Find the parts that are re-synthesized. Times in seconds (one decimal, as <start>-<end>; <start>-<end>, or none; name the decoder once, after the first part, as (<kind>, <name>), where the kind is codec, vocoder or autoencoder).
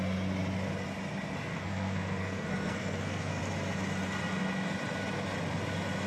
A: 1.5-3.4 (codec, SNAC)